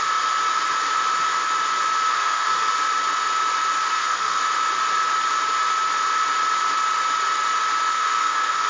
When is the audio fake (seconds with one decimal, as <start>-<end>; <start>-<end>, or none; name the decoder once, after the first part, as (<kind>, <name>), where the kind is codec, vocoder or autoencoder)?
2.1-2.7 (codec, SNAC); 3.9-4.4; 7.9-8.7